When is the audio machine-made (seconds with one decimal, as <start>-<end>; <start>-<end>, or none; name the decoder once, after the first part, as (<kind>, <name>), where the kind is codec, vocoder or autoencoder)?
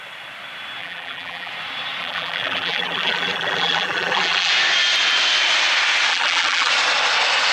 0.8-1.5 (vocoder, BigVGAN v2); 2.0-4.5; 6.1-6.7